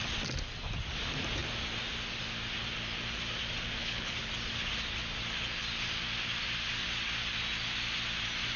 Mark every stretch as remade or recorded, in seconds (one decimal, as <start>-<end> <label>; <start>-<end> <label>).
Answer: 0.0-3.8 recorded; 3.8-4.3 remade; 4.3-8.6 recorded